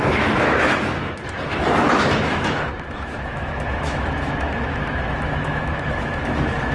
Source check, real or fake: fake